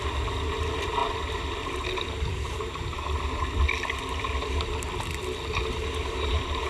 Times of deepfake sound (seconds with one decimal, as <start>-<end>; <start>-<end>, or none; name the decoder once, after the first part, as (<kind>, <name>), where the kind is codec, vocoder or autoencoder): none